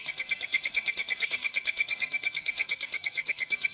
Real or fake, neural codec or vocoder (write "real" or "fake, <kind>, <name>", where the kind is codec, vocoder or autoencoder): fake, codec, SNAC